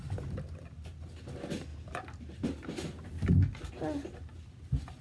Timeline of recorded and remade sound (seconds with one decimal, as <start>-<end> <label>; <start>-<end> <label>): 0.0-5.0 recorded